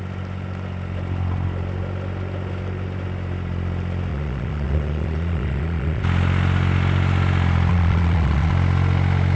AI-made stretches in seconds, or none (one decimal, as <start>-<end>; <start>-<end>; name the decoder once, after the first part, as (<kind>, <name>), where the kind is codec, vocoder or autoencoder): 4.1-6.0 (vocoder, Vocos); 7.7-8.5